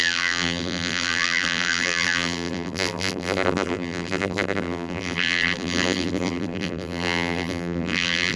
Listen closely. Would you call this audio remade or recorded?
remade